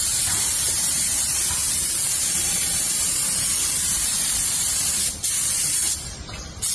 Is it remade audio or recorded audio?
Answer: remade